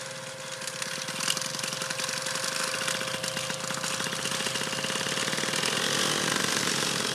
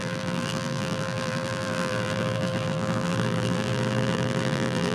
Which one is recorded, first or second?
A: first